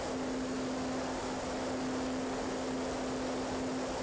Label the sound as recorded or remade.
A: recorded